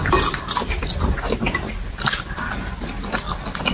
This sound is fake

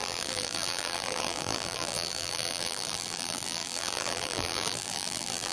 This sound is fake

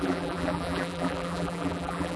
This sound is fake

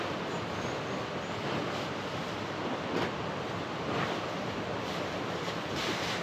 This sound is real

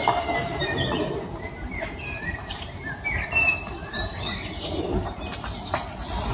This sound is fake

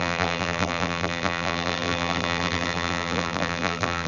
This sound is fake